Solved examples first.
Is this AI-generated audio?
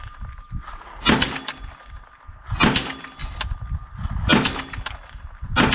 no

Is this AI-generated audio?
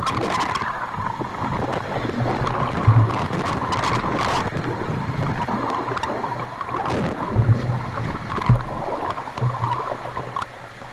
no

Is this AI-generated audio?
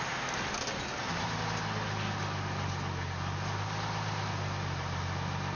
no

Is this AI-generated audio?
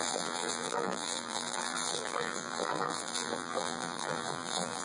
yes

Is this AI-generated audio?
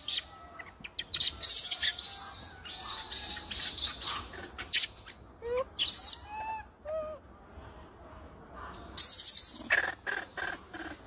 no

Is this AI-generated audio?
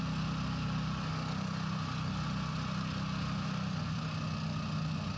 no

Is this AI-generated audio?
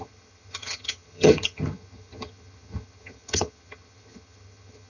yes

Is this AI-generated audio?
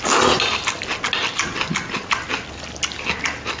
no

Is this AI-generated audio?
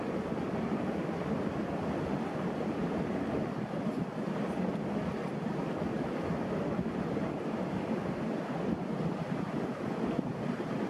no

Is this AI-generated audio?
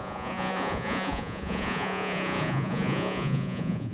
yes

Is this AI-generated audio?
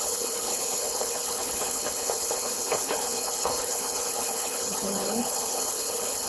yes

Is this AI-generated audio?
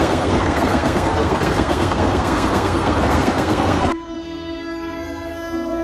yes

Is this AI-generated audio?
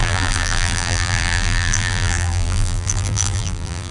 yes